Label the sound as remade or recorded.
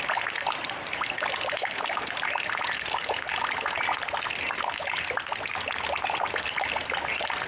recorded